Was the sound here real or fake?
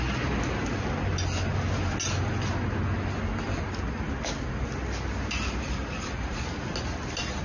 real